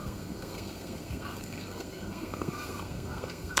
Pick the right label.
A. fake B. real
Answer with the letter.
A